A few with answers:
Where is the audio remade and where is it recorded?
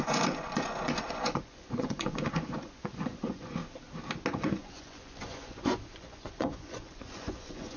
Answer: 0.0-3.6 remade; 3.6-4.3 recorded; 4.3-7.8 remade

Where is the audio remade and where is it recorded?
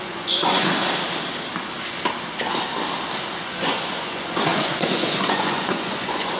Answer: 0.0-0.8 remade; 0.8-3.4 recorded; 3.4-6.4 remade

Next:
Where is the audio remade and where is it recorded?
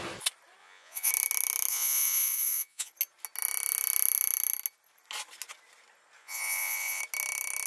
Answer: 0.0-0.6 recorded; 0.6-1.1 remade; 1.1-1.7 recorded; 1.7-2.9 remade; 2.9-6.2 recorded; 6.2-7.0 remade; 7.0-7.7 recorded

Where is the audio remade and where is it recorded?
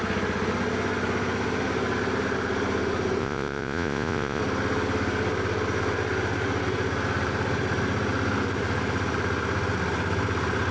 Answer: 0.0-3.2 recorded; 3.2-4.4 remade; 4.4-10.7 recorded